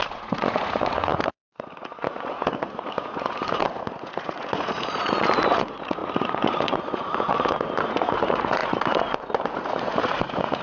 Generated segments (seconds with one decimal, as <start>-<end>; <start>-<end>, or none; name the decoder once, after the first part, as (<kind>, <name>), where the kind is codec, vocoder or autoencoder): 0.0-10.6 (vocoder, Vocos)